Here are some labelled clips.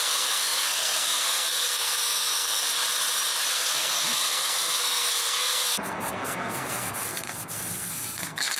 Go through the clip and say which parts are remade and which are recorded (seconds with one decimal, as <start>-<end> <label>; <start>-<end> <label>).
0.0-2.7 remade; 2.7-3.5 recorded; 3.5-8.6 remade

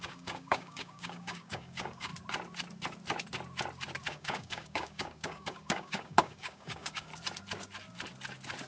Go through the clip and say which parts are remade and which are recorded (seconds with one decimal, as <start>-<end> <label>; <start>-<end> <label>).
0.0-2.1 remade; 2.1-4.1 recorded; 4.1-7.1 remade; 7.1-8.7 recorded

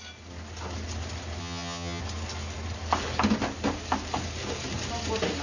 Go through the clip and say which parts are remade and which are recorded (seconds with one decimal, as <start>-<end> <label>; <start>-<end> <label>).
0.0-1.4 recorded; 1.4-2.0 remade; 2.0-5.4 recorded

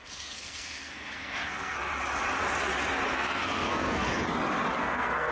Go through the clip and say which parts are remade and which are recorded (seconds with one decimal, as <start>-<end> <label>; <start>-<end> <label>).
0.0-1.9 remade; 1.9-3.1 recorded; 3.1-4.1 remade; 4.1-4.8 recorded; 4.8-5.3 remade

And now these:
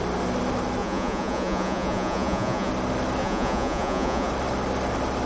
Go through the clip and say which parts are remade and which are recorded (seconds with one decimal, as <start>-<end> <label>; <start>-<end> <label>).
0.0-0.8 recorded; 0.8-2.7 remade; 2.7-3.2 recorded; 3.2-4.3 remade; 4.3-5.3 recorded

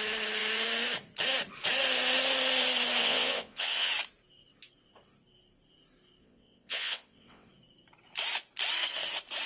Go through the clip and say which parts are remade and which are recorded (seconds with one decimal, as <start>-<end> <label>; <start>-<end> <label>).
0.0-3.0 recorded; 3.0-3.9 remade; 3.9-6.2 recorded; 6.2-7.5 remade; 7.5-9.5 recorded

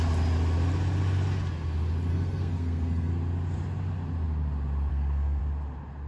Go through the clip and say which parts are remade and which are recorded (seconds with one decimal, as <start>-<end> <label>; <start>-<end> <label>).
0.0-2.1 recorded; 2.1-3.1 remade; 3.1-4.9 recorded; 4.9-5.4 remade; 5.4-6.1 recorded